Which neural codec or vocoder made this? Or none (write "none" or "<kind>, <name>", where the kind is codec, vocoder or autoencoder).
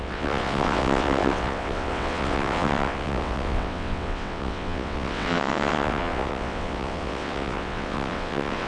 vocoder, WaveNeXt